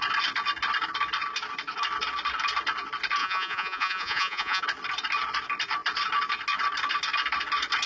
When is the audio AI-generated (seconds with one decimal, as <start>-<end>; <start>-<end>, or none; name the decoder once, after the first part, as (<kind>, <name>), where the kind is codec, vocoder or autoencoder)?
3.2-4.6 (vocoder, Vocos)